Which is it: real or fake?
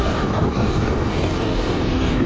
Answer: fake